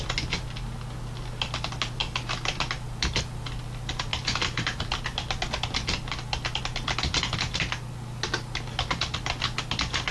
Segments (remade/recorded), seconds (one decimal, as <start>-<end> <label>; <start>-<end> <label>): 0.0-10.1 recorded